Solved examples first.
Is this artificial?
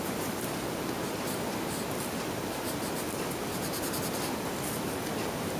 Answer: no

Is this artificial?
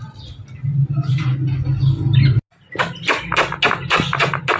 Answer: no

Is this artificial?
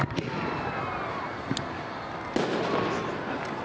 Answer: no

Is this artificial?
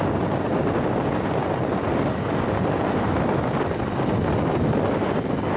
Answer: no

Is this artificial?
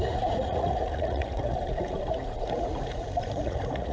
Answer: yes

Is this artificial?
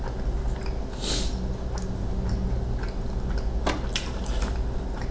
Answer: no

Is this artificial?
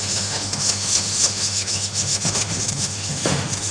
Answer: yes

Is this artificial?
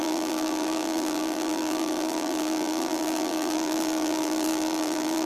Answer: yes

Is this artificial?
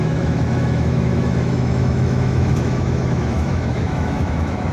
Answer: yes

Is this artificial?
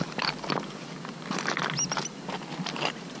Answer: no